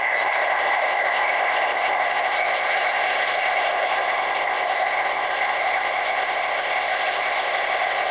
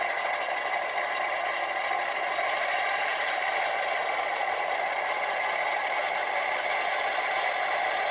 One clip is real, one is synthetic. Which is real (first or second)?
second